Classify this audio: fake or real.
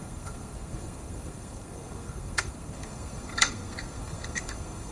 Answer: fake